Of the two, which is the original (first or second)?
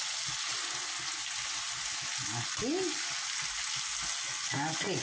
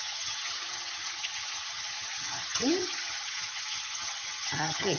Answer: first